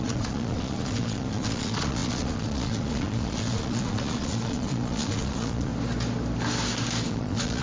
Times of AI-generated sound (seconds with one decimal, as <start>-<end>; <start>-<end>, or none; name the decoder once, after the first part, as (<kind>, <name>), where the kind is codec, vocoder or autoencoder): 0.0-5.7 (vocoder, Vocos); 7.1-7.6